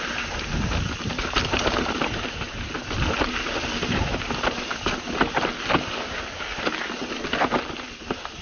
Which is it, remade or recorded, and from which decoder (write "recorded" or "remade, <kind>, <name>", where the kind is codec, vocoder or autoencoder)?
recorded